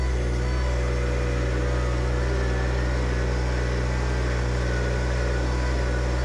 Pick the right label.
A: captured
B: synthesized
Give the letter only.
A